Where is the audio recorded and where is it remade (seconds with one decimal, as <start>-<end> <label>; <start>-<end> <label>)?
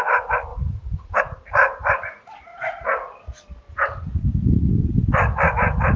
0.0-0.5 recorded; 0.5-1.2 remade; 1.2-6.0 recorded